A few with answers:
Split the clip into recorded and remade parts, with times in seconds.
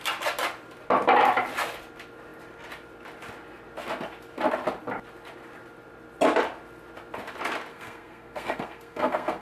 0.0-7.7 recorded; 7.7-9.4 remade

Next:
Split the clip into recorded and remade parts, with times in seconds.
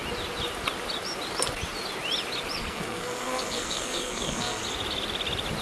0.0-2.6 recorded; 2.6-4.6 remade; 4.6-5.6 recorded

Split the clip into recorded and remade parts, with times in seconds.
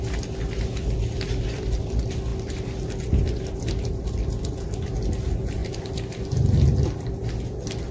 0.0-7.9 recorded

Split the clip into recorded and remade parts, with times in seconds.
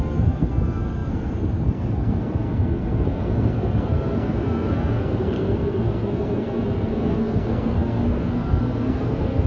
0.0-9.5 remade